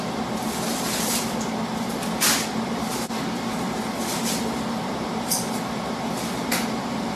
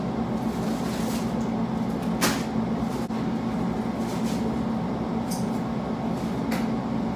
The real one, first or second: second